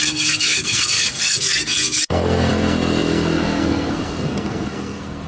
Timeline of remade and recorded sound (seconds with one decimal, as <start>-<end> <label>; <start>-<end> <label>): 0.0-5.3 remade